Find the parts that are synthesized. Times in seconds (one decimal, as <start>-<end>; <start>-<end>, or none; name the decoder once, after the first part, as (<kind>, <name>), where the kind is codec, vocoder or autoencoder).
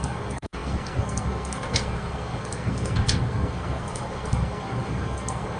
0.0-5.6 (codec, SNAC)